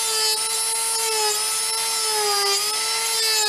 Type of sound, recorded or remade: recorded